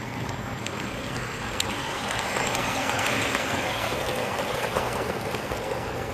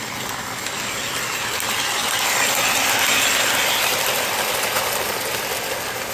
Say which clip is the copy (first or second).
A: first